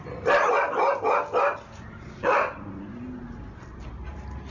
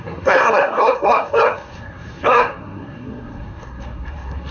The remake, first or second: second